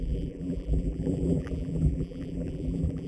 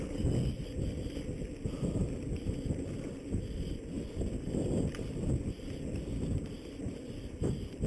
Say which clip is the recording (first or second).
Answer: second